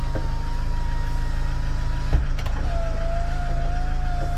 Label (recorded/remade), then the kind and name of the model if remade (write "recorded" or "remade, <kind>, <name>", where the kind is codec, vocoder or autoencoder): recorded